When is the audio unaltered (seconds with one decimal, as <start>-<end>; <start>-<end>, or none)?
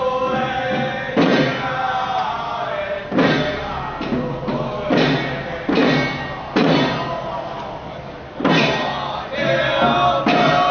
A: 0.0-10.7